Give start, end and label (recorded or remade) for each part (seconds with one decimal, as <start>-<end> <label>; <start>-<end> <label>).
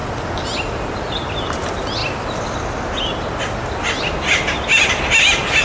0.0-5.6 recorded